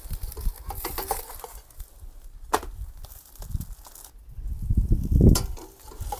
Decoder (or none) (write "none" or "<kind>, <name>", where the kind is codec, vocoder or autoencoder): none